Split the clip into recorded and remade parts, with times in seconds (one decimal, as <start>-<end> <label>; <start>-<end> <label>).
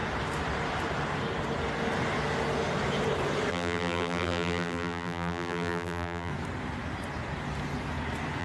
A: 0.0-3.5 recorded; 3.5-6.3 remade; 6.3-8.4 recorded